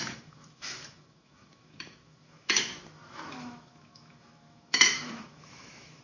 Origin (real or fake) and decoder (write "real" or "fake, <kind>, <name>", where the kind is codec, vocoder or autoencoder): fake, autoencoder, DAC-VAE